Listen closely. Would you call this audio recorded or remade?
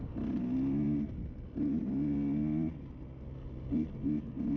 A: recorded